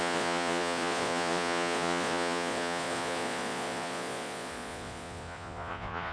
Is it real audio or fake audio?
fake